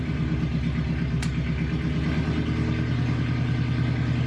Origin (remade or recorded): recorded